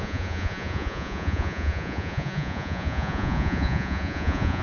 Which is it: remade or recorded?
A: remade